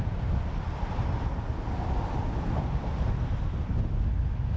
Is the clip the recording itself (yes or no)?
yes